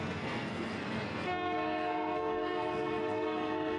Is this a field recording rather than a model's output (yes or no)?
no